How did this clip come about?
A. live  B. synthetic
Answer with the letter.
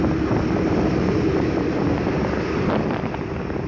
A